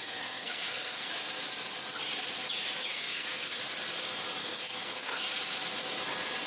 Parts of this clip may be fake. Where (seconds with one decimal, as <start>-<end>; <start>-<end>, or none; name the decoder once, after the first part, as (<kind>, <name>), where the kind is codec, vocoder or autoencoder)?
0.0-1.1 (codec, SNAC); 2.9-3.6; 4.4-5.2